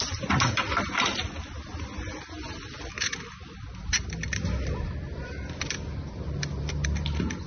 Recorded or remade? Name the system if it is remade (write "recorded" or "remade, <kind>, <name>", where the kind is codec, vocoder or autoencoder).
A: recorded